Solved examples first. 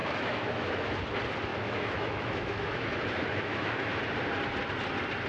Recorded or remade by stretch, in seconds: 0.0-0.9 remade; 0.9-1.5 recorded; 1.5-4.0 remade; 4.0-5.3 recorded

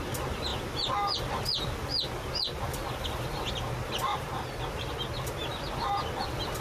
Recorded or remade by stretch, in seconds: 0.0-6.6 recorded

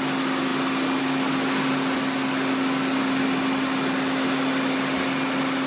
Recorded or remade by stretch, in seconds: 0.0-5.7 recorded

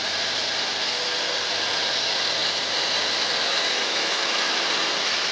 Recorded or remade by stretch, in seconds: 0.0-3.5 recorded; 3.5-4.6 remade; 4.6-5.3 recorded